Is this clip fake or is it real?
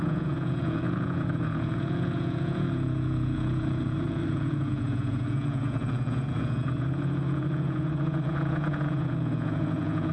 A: fake